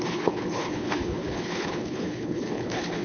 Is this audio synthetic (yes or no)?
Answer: yes